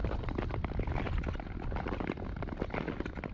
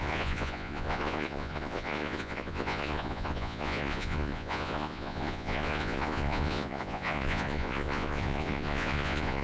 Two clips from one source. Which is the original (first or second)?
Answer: first